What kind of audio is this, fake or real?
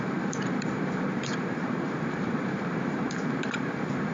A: fake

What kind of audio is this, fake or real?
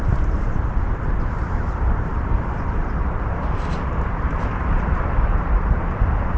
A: fake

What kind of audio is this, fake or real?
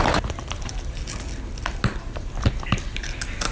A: real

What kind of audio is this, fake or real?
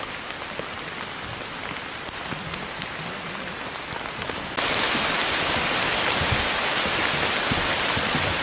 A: real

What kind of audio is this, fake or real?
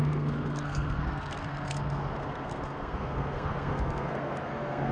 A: fake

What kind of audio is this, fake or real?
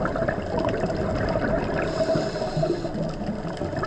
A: real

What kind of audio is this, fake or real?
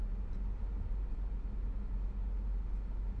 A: real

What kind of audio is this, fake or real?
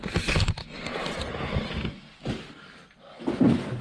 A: fake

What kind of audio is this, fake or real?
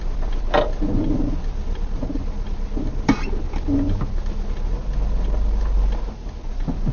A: real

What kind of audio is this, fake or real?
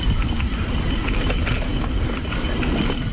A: real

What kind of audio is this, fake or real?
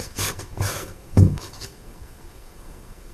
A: fake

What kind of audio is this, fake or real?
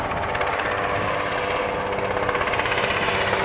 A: real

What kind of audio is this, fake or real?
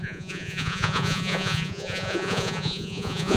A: fake